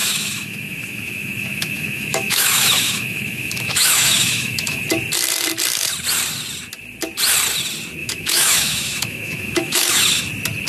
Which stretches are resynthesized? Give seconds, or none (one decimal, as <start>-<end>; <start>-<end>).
0.0-4.8; 8.0-10.2